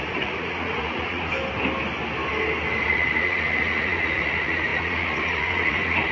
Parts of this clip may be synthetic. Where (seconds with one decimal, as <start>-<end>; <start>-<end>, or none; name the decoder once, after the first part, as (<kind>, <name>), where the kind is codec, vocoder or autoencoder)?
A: 0.0-1.3 (vocoder, Vocos); 2.9-6.1